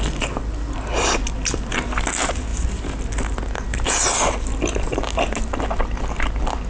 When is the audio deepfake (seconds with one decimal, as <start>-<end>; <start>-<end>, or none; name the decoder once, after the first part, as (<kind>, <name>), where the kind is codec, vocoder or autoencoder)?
none